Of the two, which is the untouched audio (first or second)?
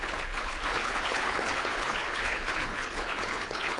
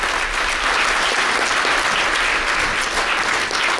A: second